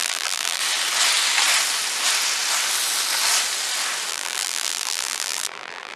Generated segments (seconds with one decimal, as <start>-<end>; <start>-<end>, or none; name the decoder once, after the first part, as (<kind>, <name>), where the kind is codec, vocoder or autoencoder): 0.0-0.6 (vocoder, BigVGAN v2); 4.1-6.0